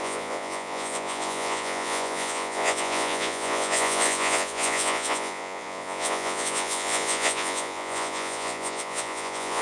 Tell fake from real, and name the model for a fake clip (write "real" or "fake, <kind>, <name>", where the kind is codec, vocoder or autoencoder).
fake, vocoder, Vocos